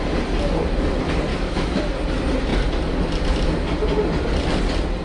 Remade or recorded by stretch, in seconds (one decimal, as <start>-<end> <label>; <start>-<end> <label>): 0.0-1.3 recorded; 1.3-1.8 remade; 1.8-5.0 recorded